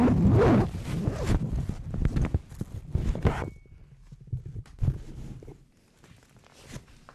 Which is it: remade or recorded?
recorded